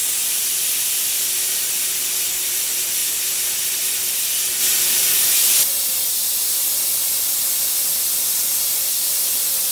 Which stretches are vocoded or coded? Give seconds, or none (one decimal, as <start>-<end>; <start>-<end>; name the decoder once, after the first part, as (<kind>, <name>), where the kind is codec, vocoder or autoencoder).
0.0-3.0 (vocoder, BigVGAN v2); 7.0-8.6